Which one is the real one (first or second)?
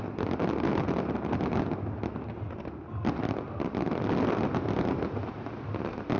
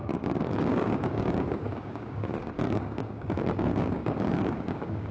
first